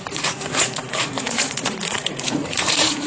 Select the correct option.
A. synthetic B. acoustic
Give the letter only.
A